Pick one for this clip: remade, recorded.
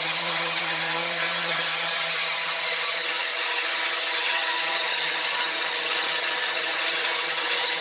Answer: remade